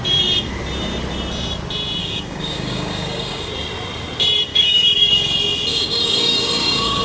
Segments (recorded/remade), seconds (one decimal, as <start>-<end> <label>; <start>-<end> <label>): 0.0-2.0 recorded; 2.0-3.5 remade; 3.5-4.5 recorded; 4.5-5.1 remade; 5.1-5.7 recorded; 5.7-7.0 remade